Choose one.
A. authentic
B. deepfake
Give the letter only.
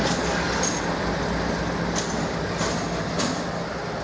A